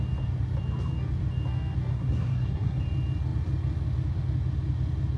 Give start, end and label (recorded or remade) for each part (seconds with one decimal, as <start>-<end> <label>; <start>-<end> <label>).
0.0-1.9 recorded; 1.9-2.8 remade; 2.8-5.2 recorded